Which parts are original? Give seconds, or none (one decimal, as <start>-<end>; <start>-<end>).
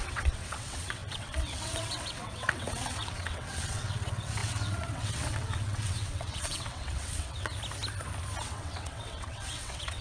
7.5-8.4